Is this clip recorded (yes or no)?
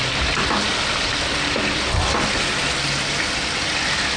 yes